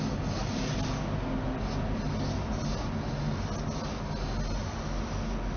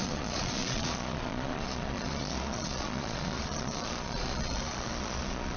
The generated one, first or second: second